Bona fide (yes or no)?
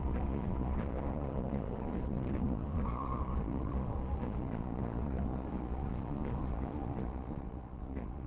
no